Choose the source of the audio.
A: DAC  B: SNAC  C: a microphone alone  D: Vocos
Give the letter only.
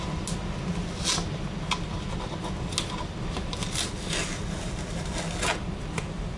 C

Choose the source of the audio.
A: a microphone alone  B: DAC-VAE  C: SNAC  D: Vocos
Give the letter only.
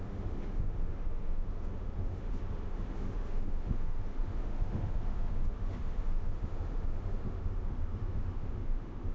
B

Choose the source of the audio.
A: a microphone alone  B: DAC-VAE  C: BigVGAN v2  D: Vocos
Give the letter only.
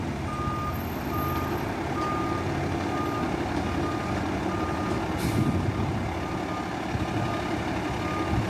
A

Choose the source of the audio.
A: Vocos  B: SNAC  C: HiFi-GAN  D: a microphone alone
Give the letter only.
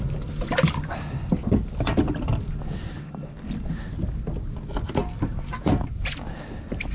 D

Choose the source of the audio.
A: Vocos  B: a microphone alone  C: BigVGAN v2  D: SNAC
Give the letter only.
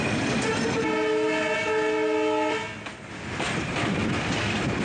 B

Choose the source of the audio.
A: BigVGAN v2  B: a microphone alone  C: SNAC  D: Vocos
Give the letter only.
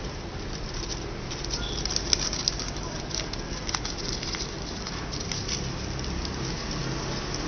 B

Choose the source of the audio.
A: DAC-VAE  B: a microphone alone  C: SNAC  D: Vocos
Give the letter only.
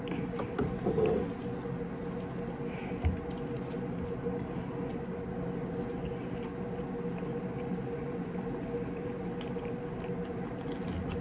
B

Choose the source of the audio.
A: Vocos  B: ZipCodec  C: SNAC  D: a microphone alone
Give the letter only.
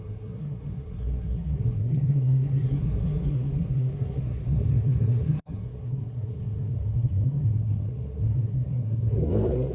C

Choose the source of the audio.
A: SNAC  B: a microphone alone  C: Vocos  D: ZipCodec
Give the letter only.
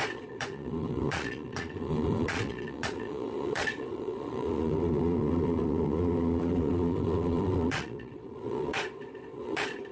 C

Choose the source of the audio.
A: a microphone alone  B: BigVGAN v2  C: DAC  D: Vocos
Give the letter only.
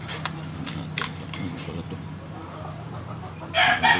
A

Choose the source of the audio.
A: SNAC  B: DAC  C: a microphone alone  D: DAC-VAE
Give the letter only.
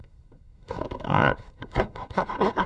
A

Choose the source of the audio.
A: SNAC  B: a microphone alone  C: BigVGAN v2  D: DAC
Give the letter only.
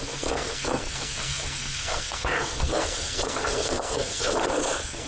A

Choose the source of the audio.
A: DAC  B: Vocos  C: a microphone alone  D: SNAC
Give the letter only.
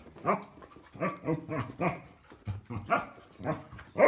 C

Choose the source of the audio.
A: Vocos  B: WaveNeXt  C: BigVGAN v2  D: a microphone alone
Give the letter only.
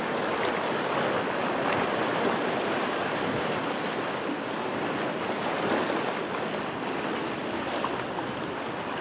D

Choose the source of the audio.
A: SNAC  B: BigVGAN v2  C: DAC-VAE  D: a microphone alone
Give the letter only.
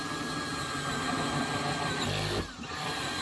D